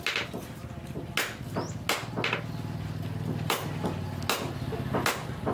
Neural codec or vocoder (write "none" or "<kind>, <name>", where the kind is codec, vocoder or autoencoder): none